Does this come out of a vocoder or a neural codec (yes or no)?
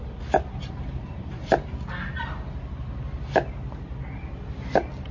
no